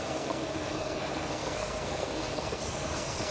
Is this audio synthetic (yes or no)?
yes